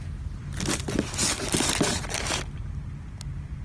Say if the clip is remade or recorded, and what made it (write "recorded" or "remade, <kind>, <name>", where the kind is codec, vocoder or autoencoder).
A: recorded